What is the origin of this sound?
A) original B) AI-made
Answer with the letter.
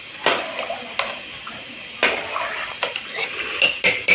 A